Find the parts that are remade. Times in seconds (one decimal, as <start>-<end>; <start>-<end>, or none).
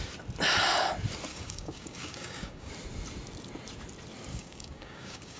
1.3-2.7; 4.3-5.4